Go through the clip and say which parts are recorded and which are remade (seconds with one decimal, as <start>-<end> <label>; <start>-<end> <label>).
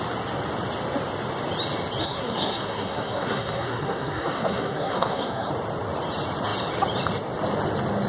0.0-2.0 recorded; 2.0-5.5 remade; 5.5-8.1 recorded